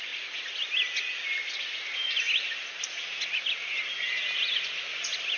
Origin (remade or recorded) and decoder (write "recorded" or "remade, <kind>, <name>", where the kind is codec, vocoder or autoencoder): recorded